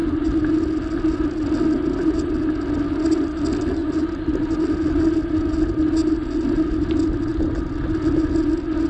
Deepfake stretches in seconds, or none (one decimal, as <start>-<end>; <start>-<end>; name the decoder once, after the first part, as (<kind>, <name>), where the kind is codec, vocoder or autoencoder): none